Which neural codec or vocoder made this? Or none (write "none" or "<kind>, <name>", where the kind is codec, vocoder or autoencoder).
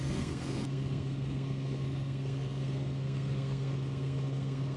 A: codec, SNAC